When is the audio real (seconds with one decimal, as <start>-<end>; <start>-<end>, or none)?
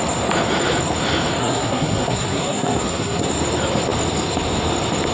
0.0-1.4; 3.3-5.1